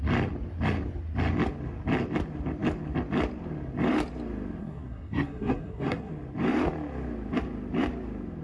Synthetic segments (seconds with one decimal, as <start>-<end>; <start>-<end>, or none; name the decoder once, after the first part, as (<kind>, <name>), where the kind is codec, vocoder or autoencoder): 4.6-6.1 (codec, SNAC)